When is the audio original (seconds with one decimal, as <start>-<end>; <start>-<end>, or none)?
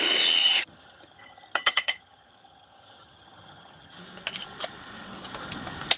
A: 0.0-0.4; 4.0-6.0